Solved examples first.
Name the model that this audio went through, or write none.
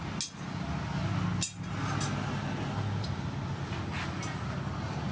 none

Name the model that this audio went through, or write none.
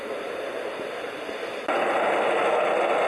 none